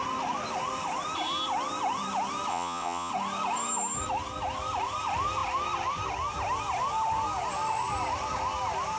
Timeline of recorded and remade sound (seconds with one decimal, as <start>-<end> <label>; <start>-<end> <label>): 0.0-2.5 recorded; 2.5-3.1 remade; 3.1-9.0 recorded